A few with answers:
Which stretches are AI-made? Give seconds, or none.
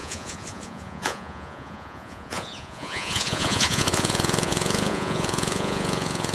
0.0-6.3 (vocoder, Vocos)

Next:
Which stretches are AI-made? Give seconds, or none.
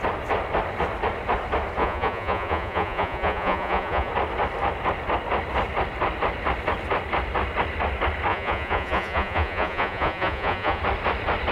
1.8-4.1 (vocoder, Vocos); 8.3-10.8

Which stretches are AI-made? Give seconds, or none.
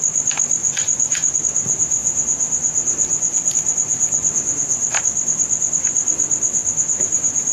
0.6-1.4 (vocoder, Vocos)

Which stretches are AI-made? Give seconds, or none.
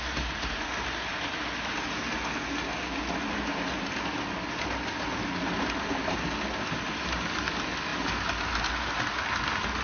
none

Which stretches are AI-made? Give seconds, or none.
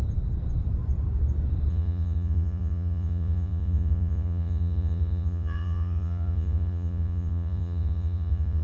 1.7-8.6 (vocoder, Vocos)